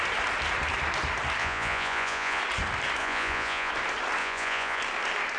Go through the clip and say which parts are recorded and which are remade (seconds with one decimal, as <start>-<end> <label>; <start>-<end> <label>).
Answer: 0.0-1.4 recorded; 1.4-2.4 remade; 2.4-3.0 recorded; 3.0-3.7 remade; 3.7-4.2 recorded; 4.2-4.8 remade; 4.8-5.4 recorded